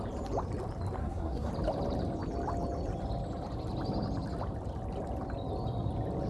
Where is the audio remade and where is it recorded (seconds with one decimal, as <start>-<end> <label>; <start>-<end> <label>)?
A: 0.0-1.0 recorded; 1.0-1.5 remade; 1.5-6.3 recorded